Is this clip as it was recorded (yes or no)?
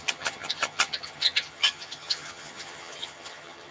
no